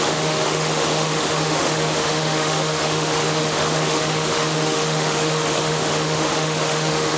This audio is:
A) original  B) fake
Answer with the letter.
B